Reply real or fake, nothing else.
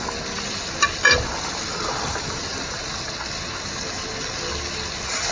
real